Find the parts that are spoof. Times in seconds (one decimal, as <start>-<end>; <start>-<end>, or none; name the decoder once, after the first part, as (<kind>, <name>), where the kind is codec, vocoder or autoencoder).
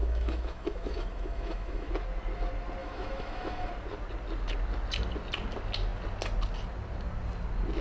0.0-1.9 (autoencoder, DAC-VAE); 2.8-3.7